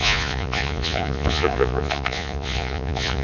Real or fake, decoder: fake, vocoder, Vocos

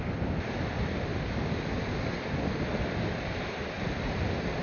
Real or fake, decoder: real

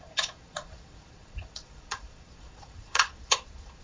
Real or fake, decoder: fake, vocoder, Vocos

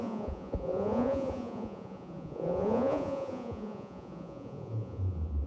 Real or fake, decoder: fake, vocoder, Vocos